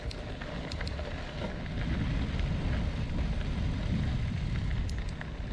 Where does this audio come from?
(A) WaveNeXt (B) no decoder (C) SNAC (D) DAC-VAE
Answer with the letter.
B